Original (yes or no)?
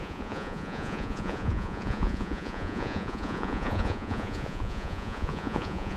no